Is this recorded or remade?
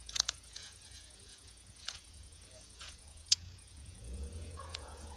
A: remade